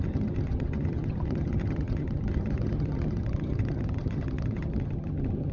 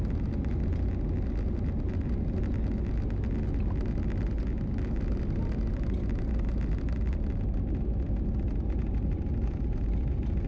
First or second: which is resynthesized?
first